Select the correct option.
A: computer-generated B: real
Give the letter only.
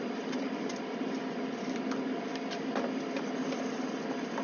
B